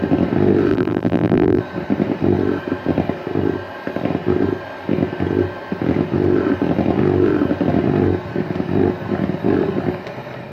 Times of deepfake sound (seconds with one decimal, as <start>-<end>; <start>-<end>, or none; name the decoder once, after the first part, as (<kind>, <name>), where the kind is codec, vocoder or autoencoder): 0.7-1.6 (vocoder, BigVGAN v2)